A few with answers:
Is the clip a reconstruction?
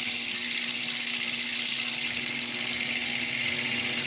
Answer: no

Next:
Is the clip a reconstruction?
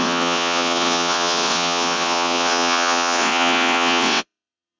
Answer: yes